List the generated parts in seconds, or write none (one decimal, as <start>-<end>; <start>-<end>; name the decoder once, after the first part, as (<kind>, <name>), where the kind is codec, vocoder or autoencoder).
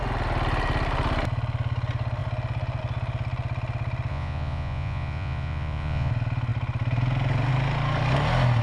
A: 4.1-6.1 (vocoder, Vocos)